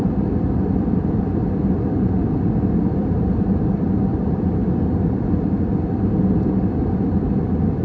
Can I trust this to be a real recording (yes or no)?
no